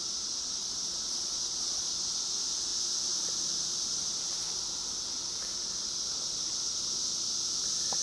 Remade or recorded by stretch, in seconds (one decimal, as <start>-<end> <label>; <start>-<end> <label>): 0.0-0.6 recorded; 0.6-1.9 remade; 1.9-8.0 recorded